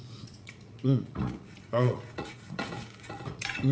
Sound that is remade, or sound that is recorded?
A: remade